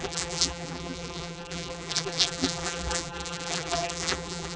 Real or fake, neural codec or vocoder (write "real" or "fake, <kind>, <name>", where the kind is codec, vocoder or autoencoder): fake, vocoder, BigVGAN v2